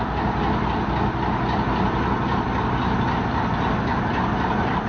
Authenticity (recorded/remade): recorded